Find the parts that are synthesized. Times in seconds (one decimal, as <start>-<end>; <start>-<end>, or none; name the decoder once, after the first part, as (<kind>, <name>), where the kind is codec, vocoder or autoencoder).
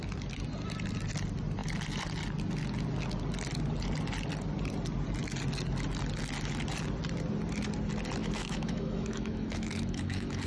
8.2-10.5 (autoencoder, DAC-VAE)